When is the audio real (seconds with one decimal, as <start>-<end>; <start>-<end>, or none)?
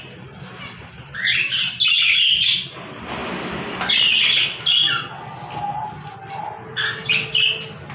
0.0-7.9